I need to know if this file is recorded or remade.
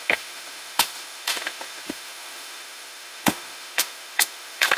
remade